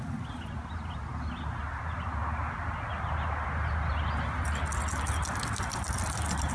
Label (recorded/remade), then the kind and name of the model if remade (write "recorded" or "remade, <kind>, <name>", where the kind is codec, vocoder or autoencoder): recorded